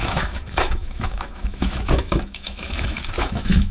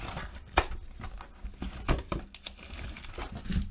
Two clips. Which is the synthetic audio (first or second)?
first